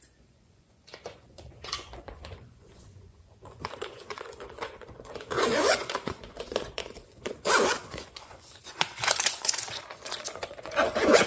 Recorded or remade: remade